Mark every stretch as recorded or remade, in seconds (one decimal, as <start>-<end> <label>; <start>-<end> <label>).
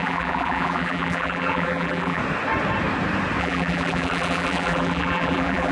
0.0-2.2 remade; 2.2-3.4 recorded; 3.4-5.7 remade